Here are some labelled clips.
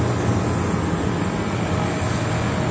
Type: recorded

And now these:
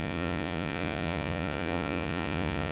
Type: remade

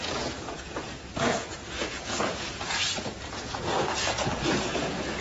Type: remade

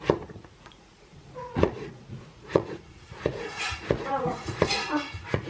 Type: remade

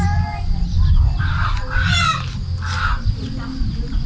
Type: recorded